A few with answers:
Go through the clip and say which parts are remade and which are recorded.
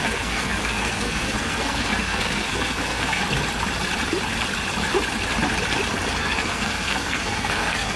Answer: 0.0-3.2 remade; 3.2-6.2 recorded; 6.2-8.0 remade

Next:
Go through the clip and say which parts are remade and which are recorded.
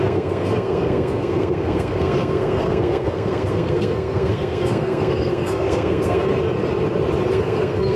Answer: 0.0-6.3 remade; 6.3-7.3 recorded; 7.3-8.0 remade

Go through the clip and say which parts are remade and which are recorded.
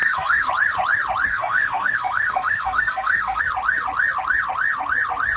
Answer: 0.0-0.5 remade; 0.5-1.3 recorded; 1.3-3.4 remade; 3.4-5.4 recorded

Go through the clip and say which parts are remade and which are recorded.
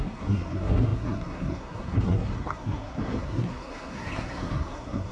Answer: 0.0-5.1 remade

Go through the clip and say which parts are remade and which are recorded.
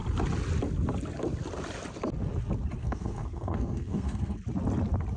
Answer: 0.0-2.8 recorded; 2.8-4.4 remade; 4.4-5.2 recorded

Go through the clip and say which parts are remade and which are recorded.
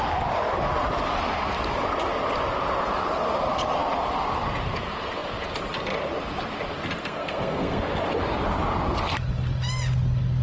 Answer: 0.0-7.0 recorded; 7.0-7.9 remade; 7.9-10.4 recorded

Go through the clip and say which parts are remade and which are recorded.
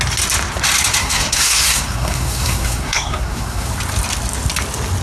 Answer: 0.0-1.0 recorded; 1.0-3.7 remade; 3.7-5.0 recorded